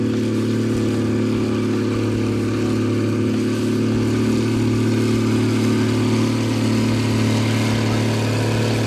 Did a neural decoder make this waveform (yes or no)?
no